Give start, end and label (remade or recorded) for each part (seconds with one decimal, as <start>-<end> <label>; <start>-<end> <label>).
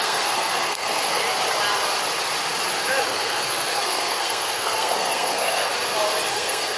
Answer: 0.0-1.2 remade; 1.2-3.1 recorded; 3.1-5.7 remade; 5.7-6.3 recorded; 6.3-6.8 remade